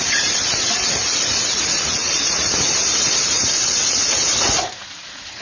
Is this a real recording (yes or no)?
no